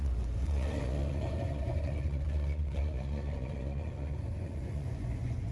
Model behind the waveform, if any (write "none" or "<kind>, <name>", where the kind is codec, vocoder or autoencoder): vocoder, Vocos